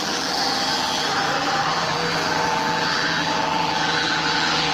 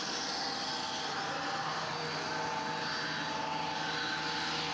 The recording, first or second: second